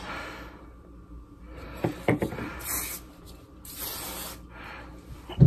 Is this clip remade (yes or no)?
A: no